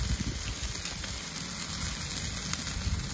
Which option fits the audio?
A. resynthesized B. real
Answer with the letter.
B